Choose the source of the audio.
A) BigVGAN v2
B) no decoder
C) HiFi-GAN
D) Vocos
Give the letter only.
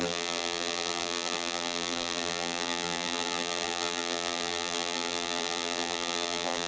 A